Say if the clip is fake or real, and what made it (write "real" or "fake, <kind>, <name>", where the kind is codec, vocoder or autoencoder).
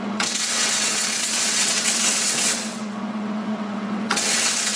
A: fake, vocoder, WaveNeXt